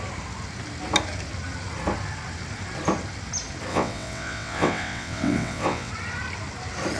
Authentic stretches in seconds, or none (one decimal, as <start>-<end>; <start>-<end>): 0.0-3.7; 5.9-7.0